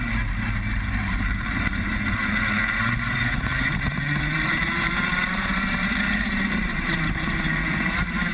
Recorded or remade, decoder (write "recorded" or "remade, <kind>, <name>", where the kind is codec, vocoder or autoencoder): remade, vocoder, BigVGAN v2